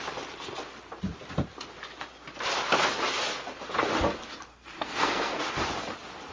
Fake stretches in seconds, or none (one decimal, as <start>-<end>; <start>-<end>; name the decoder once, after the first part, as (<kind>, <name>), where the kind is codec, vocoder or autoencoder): 4.5-5.4 (codec, SNAC)